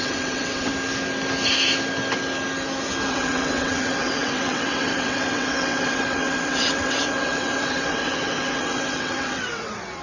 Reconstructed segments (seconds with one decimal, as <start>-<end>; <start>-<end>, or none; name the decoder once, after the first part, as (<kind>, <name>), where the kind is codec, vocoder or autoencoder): 0.0-0.7 (vocoder, WaveNeXt); 3.1-10.0